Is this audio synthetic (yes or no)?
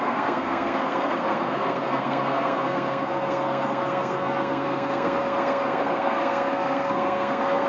yes